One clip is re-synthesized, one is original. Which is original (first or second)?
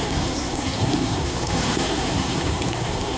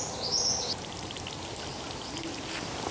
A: second